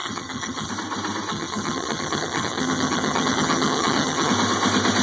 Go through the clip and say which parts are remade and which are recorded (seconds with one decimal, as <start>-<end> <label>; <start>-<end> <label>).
0.0-0.7 remade; 0.7-1.3 recorded; 1.3-4.3 remade; 4.3-5.0 recorded